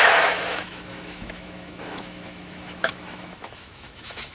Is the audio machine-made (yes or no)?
yes